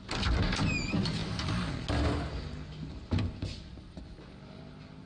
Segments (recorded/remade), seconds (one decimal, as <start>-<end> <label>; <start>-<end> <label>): 0.0-5.1 recorded